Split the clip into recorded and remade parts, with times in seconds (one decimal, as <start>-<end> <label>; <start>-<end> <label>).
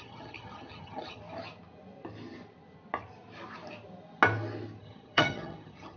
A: 0.0-1.2 remade; 1.2-4.8 recorded; 4.8-6.0 remade